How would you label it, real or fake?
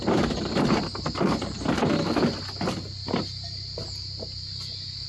real